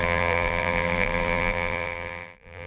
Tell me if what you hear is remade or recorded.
remade